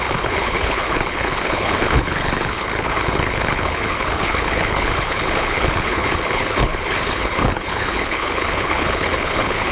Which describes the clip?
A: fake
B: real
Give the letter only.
A